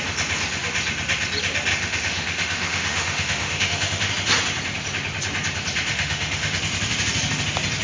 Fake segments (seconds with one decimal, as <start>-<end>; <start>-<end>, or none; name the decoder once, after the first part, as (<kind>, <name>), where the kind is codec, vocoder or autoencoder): 1.7-4.1 (autoencoder, DAC-VAE); 5.9-6.6